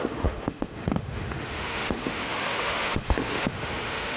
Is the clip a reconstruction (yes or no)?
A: yes